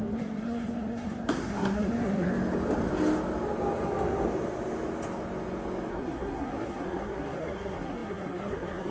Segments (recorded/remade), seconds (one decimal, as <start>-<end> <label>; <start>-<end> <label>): 0.0-2.3 remade; 2.3-5.9 recorded; 5.9-8.9 remade